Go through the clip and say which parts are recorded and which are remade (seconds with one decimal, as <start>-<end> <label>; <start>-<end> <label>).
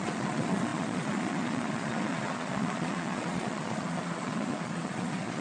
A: 0.0-5.4 remade